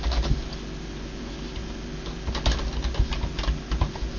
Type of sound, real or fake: real